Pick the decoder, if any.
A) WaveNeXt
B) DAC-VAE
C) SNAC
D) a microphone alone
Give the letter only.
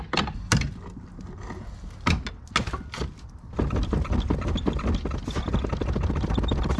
D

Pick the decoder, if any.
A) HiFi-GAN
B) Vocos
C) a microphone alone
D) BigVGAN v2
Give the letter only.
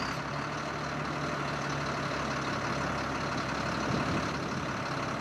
C